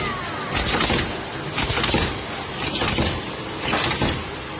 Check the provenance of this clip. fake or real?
real